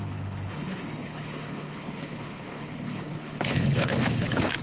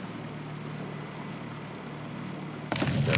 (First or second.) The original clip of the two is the second